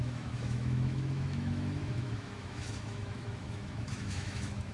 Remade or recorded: remade